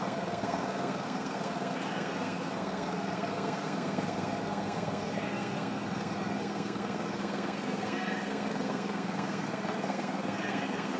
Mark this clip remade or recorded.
remade